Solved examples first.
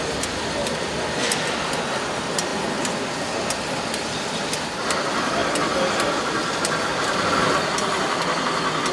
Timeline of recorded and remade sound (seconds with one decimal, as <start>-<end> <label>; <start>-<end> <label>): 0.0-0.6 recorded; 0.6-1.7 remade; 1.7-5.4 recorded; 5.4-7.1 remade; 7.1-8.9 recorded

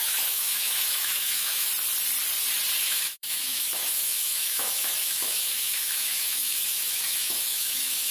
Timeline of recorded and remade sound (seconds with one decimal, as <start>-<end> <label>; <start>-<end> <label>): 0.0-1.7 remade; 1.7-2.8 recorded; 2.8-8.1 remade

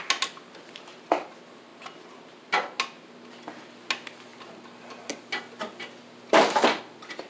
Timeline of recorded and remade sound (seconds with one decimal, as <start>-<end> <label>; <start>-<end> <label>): 0.0-7.3 recorded

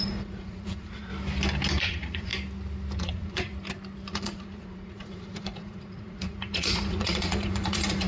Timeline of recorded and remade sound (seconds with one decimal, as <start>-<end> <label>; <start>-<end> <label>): 0.0-1.1 remade; 1.1-1.8 recorded; 1.8-2.3 remade; 2.3-3.0 recorded; 3.0-3.5 remade; 3.5-4.1 recorded; 4.1-8.1 remade

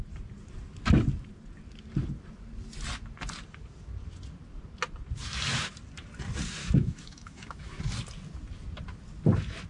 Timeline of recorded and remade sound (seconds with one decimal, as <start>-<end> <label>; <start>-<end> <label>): 0.0-6.6 recorded; 6.6-7.8 remade; 7.8-9.7 recorded

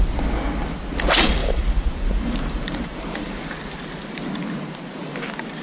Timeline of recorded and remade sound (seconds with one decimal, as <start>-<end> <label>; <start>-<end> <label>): 0.0-1.4 recorded; 1.4-3.4 remade; 3.4-5.6 recorded

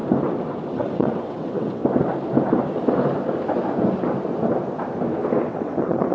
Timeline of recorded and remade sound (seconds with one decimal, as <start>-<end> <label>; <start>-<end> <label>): 0.0-0.7 recorded; 0.7-1.8 remade; 1.8-5.5 recorded; 5.5-6.1 remade